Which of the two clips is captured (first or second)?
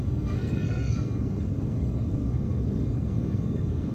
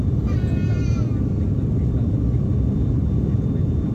second